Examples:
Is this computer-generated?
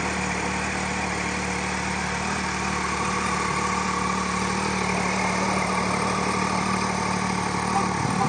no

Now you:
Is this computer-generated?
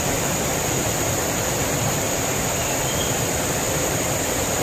yes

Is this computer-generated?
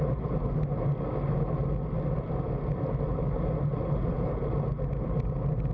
no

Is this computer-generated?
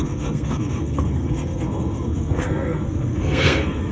yes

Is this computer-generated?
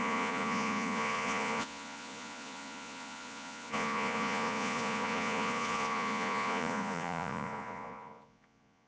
yes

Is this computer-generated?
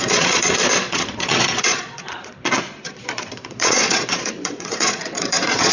yes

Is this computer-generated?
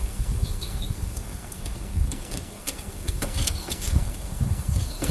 yes